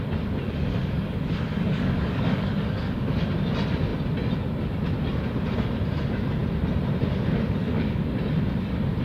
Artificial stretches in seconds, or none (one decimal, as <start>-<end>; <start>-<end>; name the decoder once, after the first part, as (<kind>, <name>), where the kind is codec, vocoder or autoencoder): 0.8-3.2 (codec, DAC); 7.6-8.1